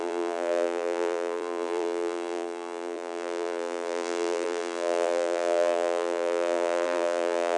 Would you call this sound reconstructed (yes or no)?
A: yes